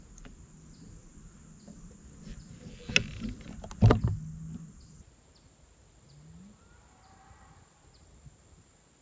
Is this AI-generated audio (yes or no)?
no